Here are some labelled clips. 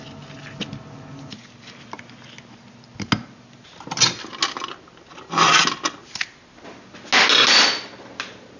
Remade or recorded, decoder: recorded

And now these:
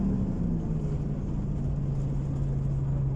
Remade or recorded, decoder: recorded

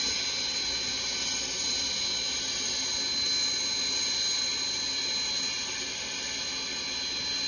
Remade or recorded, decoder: recorded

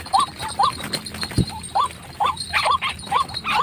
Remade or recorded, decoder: remade, vocoder, BigVGAN v2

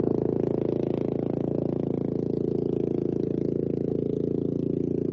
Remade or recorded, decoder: recorded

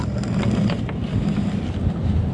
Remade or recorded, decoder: recorded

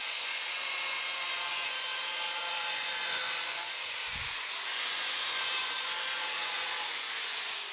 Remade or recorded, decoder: remade, vocoder, Vocos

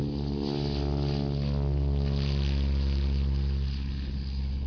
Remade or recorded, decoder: recorded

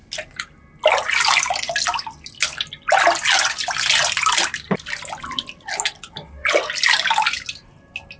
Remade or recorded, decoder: recorded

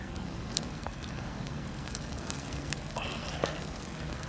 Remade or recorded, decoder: remade, codec, SNAC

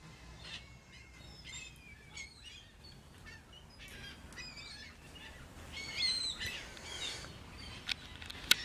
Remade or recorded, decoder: recorded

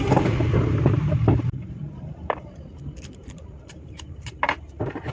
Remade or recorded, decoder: remade, vocoder, BigVGAN v2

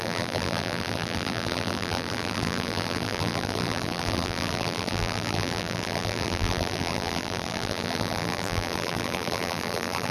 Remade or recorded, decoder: remade, vocoder, BigVGAN v2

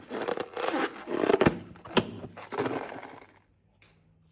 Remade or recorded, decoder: recorded